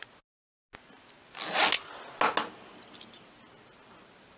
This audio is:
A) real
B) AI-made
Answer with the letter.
A